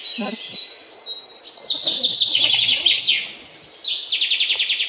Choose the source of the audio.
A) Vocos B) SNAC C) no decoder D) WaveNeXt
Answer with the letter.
C